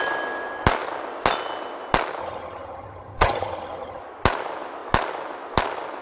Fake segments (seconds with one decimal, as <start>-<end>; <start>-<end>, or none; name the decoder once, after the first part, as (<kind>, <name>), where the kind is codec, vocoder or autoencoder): 2.2-4.0 (vocoder, HiFi-GAN)